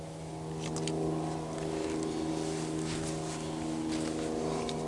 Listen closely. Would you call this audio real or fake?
real